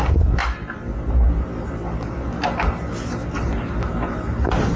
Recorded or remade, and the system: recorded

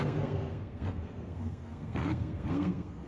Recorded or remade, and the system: remade, codec, SNAC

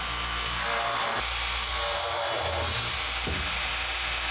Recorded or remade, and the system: recorded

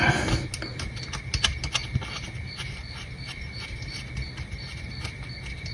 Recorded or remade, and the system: recorded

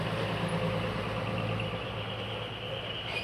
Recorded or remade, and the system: recorded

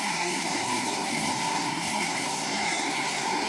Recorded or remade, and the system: remade, codec, SNAC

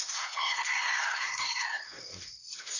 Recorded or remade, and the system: remade, codec, SNAC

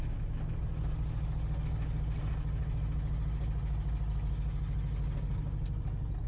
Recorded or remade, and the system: recorded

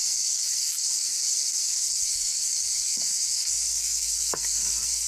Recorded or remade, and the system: remade, codec, SNAC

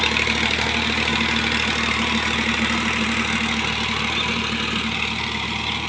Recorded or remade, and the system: recorded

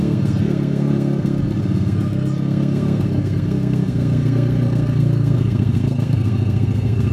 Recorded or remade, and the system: remade, codec, SNAC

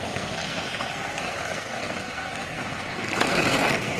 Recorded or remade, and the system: remade, codec, SNAC